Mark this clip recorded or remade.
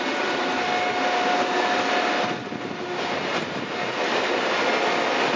recorded